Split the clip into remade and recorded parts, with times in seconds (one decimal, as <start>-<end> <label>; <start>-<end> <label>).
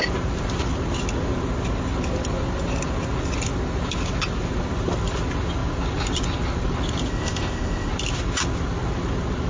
0.0-7.1 recorded; 7.1-7.9 remade; 7.9-9.5 recorded